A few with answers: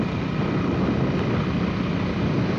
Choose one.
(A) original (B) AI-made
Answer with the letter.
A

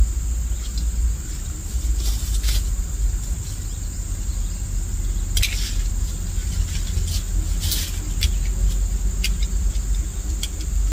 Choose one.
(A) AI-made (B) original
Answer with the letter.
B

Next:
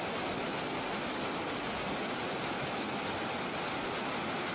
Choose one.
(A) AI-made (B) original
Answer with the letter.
B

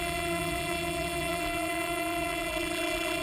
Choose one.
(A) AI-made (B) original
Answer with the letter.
A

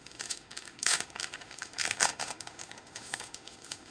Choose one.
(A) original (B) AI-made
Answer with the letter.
B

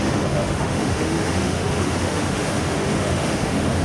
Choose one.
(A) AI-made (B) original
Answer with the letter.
A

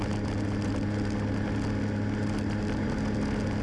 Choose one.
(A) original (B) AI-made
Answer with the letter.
A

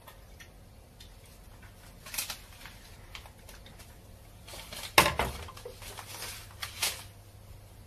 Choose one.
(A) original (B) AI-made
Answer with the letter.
A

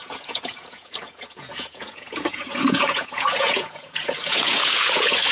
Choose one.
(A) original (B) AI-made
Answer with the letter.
B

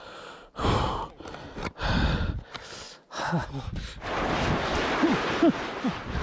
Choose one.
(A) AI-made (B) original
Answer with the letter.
B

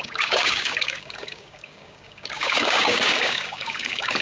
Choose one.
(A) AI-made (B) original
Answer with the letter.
A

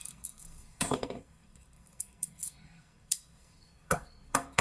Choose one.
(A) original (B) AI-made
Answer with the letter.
B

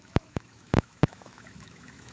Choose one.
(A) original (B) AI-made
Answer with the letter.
B